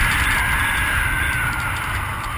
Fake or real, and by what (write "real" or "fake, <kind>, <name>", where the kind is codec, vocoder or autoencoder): real